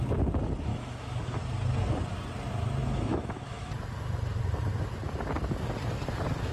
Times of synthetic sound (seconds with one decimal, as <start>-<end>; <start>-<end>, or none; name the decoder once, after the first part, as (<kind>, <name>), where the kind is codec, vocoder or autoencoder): 0.7-1.4 (autoencoder, DAC-VAE); 2.8-3.7